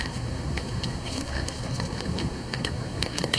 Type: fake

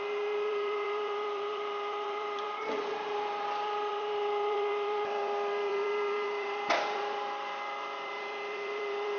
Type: fake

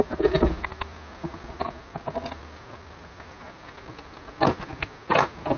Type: real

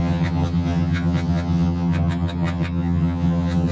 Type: fake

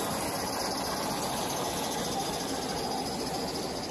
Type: real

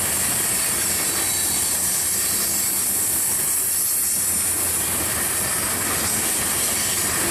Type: real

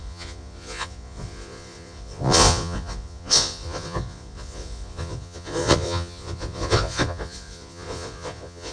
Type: fake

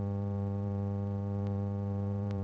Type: fake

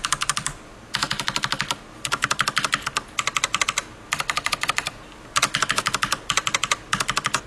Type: real